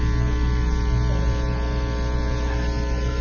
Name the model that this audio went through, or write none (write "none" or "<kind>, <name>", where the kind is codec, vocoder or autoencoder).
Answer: none